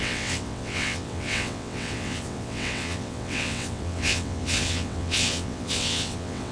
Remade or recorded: remade